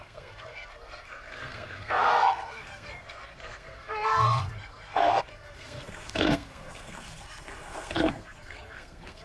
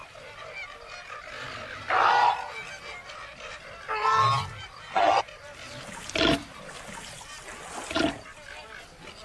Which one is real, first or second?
second